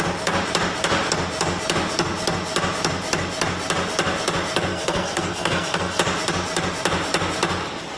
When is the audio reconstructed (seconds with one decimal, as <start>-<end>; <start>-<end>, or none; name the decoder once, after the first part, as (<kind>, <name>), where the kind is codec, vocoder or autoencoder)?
4.7-6.0 (codec, SNAC)